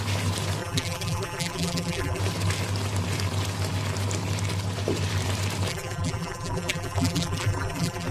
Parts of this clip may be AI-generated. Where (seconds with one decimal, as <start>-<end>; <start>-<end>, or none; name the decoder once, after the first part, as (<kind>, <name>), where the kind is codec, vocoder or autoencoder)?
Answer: 0.6-2.2 (vocoder, BigVGAN v2); 5.7-8.1